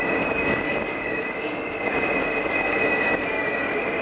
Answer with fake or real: real